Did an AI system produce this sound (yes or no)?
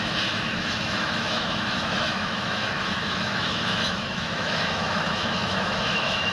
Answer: yes